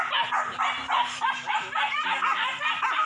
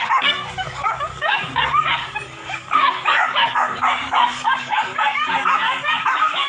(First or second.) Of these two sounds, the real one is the first